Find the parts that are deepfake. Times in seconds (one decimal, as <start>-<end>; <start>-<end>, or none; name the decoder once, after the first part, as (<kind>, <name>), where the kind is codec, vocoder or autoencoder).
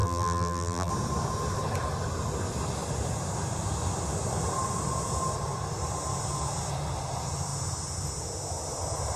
0.0-0.9 (vocoder, BigVGAN v2)